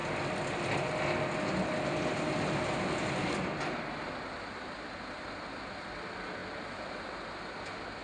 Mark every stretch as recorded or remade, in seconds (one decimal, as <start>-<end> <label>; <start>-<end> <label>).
0.0-8.0 recorded